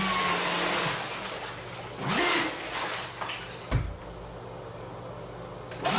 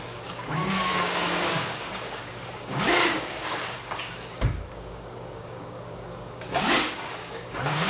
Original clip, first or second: first